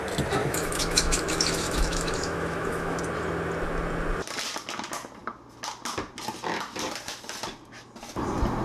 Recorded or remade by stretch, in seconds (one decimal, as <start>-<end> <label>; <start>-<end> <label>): 0.0-0.4 recorded; 0.4-3.0 remade; 3.0-8.6 recorded